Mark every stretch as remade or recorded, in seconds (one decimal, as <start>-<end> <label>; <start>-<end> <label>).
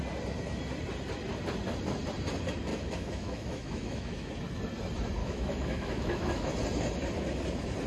0.0-2.7 recorded; 2.7-4.3 remade; 4.3-5.2 recorded; 5.2-6.5 remade; 6.5-7.9 recorded